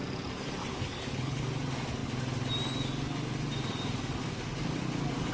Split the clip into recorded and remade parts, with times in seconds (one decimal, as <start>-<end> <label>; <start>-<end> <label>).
0.0-0.7 recorded; 0.7-1.4 remade; 1.4-5.3 recorded